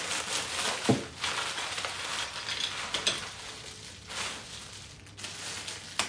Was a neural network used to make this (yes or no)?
no